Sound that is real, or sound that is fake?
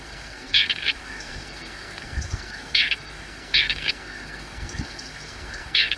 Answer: fake